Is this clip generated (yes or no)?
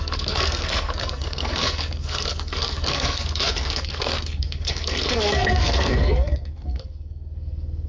yes